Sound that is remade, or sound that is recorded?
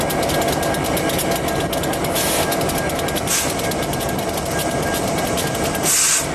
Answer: recorded